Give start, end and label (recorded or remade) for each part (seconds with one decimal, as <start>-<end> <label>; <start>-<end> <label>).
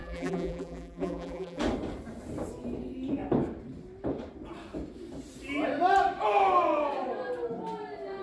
0.0-1.6 remade; 1.6-8.2 recorded